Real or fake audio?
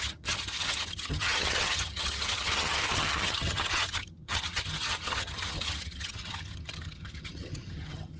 fake